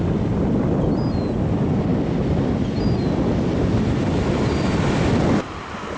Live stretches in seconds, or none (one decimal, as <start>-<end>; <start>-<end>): 0.0-6.0